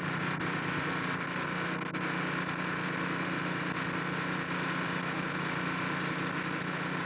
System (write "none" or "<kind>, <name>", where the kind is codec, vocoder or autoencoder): none